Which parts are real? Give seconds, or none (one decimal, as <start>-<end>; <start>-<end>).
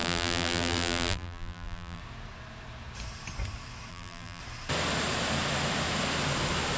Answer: 2.0-3.9; 4.4-6.8